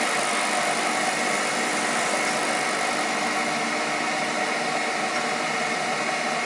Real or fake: real